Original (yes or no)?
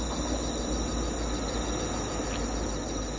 yes